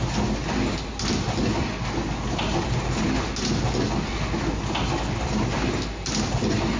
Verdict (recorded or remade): recorded